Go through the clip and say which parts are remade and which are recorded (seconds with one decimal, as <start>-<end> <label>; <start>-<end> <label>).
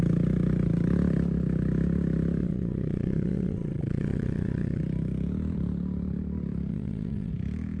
0.0-2.4 recorded; 2.4-4.8 remade; 4.8-6.7 recorded; 6.7-7.3 remade; 7.3-7.8 recorded